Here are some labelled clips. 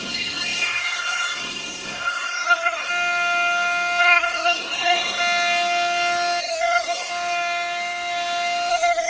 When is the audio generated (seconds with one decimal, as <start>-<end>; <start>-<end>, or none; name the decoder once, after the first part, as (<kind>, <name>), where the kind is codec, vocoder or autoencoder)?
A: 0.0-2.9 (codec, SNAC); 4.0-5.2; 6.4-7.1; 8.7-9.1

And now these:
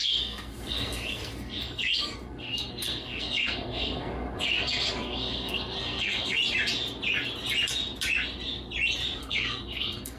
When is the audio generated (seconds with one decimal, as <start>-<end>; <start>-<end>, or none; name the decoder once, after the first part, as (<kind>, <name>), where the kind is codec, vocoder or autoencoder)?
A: 0.0-6.4 (codec, SNAC); 9.2-10.2

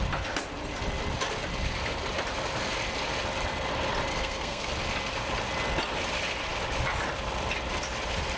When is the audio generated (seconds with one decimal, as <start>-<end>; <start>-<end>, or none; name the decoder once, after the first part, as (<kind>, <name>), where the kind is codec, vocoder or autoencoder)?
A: 4.1-4.7 (codec, SNAC)

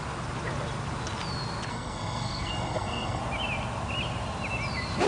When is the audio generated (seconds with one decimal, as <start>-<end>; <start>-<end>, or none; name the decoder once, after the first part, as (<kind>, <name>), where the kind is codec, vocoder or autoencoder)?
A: 1.7-3.2 (codec, SNAC)